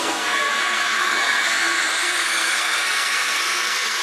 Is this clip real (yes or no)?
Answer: no